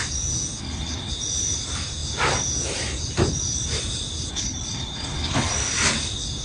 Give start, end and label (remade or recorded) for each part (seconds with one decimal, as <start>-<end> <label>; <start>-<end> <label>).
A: 0.0-0.6 recorded; 0.6-1.1 remade; 1.1-4.3 recorded; 4.3-5.5 remade; 5.5-6.4 recorded